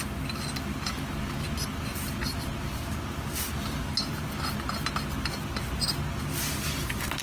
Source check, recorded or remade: recorded